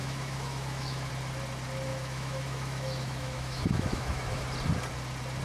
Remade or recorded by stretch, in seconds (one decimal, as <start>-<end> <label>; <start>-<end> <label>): 0.0-1.1 remade; 1.1-1.9 recorded; 1.9-4.4 remade; 4.4-5.4 recorded